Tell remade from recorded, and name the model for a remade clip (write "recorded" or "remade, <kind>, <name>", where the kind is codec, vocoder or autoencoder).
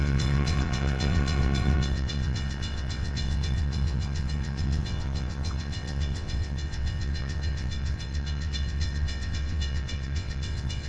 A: remade, vocoder, WaveNeXt